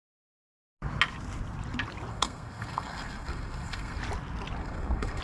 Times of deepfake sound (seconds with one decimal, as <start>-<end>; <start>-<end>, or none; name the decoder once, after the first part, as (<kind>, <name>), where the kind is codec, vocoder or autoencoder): 2.1-4.0 (codec, SNAC); 4.6-5.2